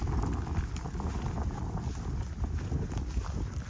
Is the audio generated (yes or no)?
no